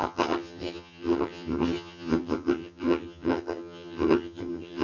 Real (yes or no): no